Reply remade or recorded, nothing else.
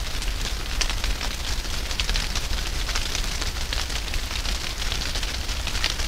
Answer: recorded